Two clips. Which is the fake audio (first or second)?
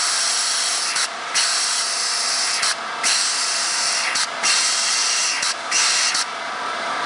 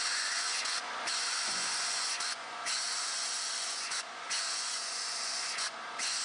second